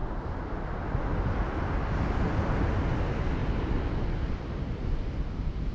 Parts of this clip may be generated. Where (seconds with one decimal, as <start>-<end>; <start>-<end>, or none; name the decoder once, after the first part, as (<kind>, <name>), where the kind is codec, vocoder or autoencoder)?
none